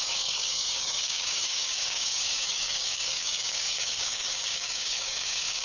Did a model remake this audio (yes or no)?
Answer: yes